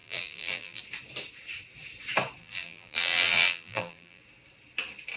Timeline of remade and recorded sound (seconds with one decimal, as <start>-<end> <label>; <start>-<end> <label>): 0.0-0.8 remade; 0.8-2.4 recorded; 2.4-4.2 remade; 4.2-5.2 recorded